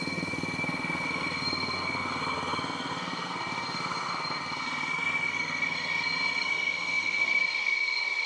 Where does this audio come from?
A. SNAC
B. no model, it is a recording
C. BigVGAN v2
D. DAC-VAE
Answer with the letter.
A